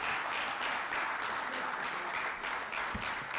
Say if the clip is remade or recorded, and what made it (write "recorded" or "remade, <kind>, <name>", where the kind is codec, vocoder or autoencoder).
recorded